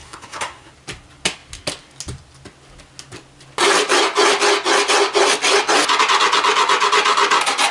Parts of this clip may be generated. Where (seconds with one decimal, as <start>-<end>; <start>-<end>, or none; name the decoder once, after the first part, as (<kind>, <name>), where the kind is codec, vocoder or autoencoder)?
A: 0.0-0.7 (codec, SNAC)